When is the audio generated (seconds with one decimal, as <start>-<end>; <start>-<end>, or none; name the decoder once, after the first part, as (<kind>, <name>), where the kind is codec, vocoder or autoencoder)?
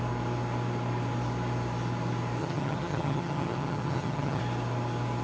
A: 2.4-4.4 (vocoder, HiFi-GAN)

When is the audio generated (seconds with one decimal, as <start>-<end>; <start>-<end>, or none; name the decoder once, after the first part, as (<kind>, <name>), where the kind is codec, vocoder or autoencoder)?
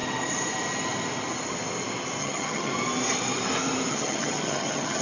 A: 2.2-2.7 (vocoder, HiFi-GAN); 3.9-5.0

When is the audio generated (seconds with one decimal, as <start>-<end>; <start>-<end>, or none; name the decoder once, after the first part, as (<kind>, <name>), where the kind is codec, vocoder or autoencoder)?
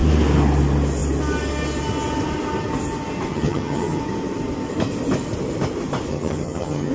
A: 3.3-4.0 (vocoder, HiFi-GAN); 6.1-6.9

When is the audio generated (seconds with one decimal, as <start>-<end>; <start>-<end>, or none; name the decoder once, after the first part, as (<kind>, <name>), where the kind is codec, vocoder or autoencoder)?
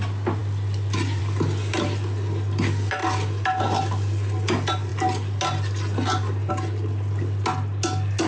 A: none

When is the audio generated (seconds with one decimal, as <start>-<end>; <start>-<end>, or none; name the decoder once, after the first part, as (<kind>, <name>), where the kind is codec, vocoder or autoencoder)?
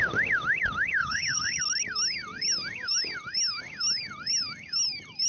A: 1.0-1.6 (vocoder, HiFi-GAN)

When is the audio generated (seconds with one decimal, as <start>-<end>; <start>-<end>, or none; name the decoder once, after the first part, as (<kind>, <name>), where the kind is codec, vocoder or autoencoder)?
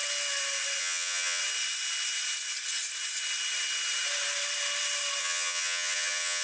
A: 0.8-1.4 (vocoder, HiFi-GAN); 5.2-6.4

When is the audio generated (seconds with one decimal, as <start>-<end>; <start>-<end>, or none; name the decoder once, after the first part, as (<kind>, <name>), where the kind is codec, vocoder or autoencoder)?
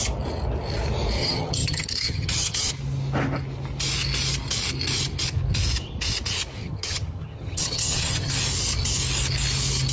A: 1.2-2.7 (vocoder, HiFi-GAN); 6.6-8.3